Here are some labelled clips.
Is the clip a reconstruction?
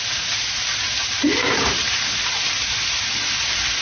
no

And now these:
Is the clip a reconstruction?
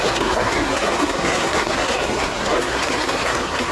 yes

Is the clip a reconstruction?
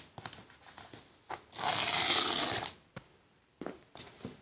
no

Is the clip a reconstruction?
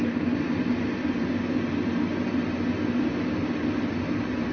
no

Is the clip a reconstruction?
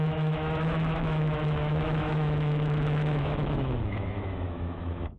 yes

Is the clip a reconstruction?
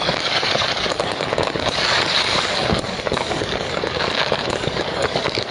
yes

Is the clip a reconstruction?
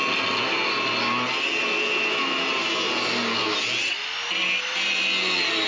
no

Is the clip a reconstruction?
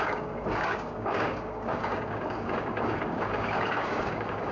yes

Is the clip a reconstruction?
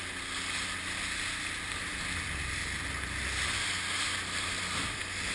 no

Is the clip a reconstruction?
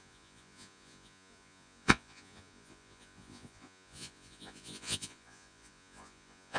yes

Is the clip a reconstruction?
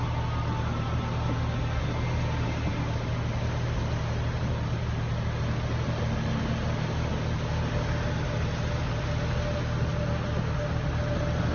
no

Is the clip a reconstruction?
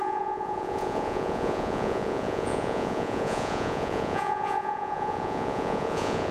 yes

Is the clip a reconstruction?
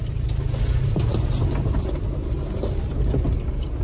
no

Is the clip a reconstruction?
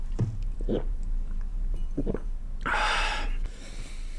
yes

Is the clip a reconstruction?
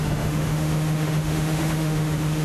yes